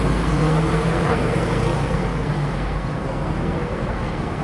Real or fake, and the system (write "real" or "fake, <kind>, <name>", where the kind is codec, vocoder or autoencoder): fake, codec, SNAC